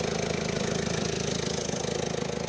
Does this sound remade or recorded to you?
recorded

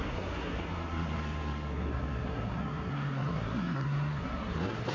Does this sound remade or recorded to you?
remade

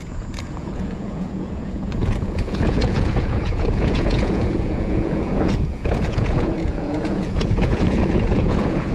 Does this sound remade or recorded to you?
remade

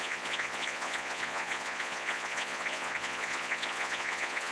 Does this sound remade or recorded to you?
remade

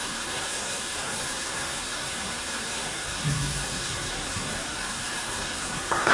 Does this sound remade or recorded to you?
remade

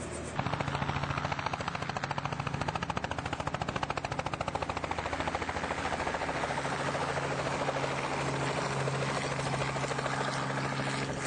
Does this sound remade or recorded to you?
recorded